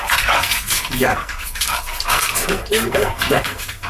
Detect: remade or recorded remade